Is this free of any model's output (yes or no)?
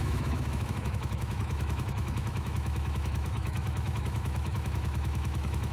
no